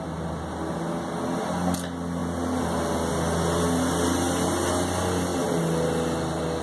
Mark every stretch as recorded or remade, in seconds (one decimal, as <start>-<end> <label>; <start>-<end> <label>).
0.0-6.6 recorded